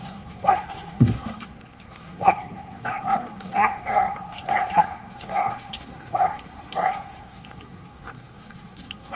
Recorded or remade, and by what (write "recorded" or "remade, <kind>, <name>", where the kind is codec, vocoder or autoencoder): remade, codec, SNAC